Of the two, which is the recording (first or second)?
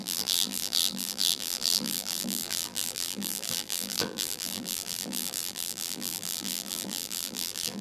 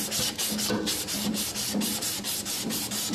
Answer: second